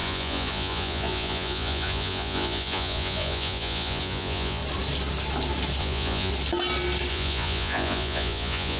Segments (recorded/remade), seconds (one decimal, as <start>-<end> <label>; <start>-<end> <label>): 0.0-4.6 remade; 4.6-5.8 recorded; 5.8-6.3 remade; 6.3-7.1 recorded; 7.1-8.8 remade